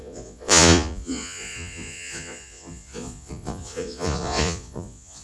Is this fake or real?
fake